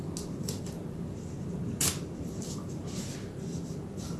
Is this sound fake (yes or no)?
no